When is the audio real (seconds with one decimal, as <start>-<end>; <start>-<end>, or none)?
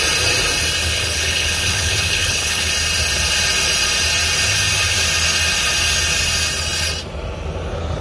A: 0.0-0.8; 2.7-8.0